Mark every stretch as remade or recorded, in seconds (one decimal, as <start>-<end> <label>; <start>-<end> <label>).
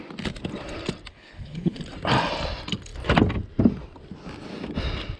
0.0-1.1 recorded; 1.1-1.8 remade; 1.8-5.2 recorded